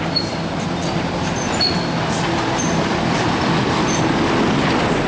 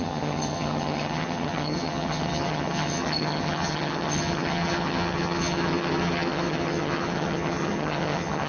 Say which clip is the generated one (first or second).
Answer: second